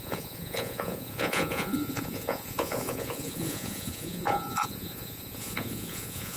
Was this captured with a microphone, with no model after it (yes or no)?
no